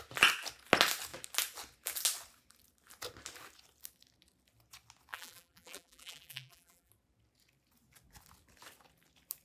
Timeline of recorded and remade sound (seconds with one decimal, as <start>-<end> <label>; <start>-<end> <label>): 0.0-5.1 recorded; 5.1-6.9 remade; 6.9-9.4 recorded